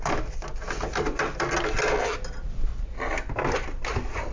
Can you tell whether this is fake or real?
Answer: real